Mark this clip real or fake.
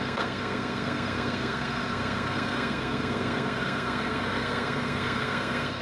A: fake